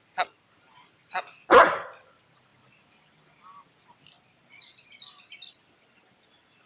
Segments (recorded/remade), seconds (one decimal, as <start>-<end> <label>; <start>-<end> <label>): 0.0-2.5 recorded; 2.5-5.5 remade; 5.5-6.7 recorded